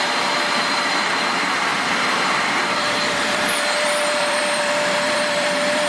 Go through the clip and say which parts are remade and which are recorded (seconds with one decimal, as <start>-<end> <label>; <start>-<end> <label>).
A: 0.0-5.9 remade